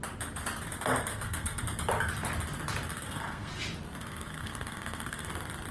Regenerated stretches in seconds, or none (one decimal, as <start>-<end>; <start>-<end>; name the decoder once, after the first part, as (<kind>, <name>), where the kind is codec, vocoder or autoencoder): 1.1-1.6 (codec, SNAC); 2.9-3.5; 4.0-5.3